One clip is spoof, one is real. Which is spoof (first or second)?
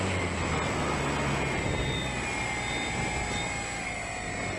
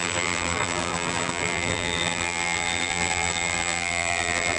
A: second